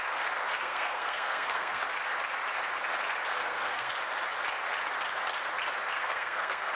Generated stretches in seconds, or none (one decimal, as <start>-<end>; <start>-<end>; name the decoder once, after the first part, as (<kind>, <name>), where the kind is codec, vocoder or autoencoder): 0.6-1.8 (codec, SNAC); 3.4-3.9; 5.9-6.7